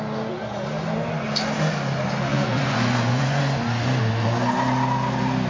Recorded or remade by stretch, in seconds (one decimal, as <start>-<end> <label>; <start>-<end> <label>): 0.0-2.3 recorded; 2.3-3.4 remade; 3.4-5.5 recorded